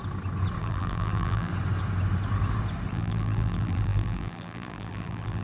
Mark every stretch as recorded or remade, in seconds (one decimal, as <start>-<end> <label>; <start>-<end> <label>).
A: 0.0-0.6 recorded; 0.6-1.5 remade; 1.5-2.9 recorded; 2.9-5.4 remade